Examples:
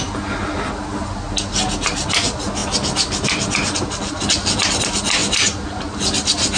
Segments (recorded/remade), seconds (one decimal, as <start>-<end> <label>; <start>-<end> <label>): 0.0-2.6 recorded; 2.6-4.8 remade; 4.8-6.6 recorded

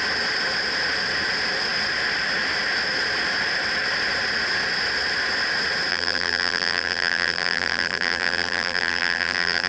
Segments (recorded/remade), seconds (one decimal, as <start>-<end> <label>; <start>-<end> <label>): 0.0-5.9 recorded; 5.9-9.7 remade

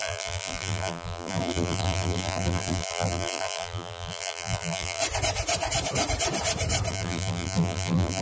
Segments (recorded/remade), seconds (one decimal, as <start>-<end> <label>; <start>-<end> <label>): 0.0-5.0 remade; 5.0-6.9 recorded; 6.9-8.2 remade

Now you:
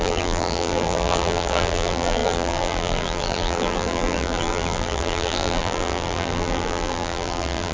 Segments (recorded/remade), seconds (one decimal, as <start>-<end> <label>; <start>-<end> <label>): 0.0-7.7 remade